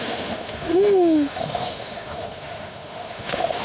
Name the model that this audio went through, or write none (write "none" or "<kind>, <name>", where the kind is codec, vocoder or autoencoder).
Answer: autoencoder, DAC-VAE